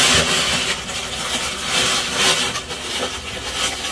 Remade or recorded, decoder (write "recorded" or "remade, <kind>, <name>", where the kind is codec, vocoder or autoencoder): recorded